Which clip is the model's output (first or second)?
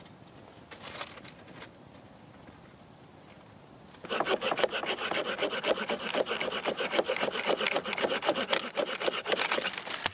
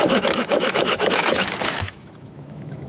second